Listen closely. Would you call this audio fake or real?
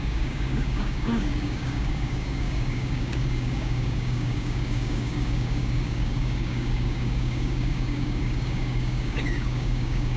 fake